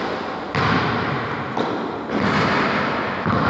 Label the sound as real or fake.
real